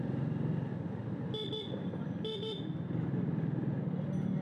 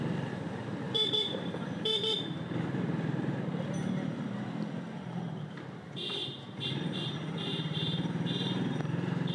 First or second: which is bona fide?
first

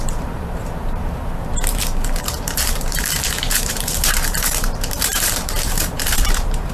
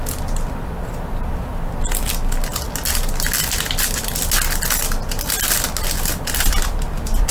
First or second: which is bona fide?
second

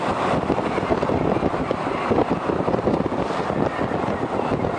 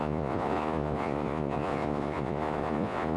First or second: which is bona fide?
first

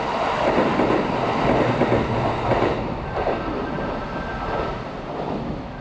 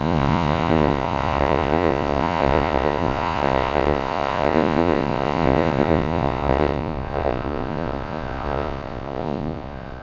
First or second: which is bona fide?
first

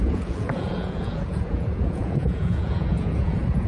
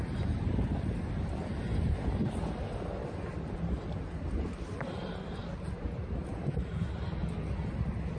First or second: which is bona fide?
second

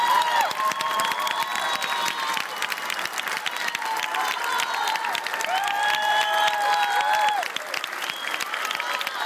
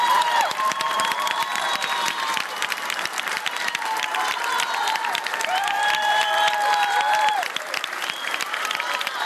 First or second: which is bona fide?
first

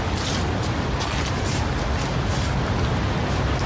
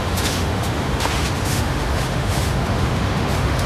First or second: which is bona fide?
first